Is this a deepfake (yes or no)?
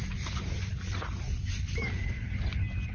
no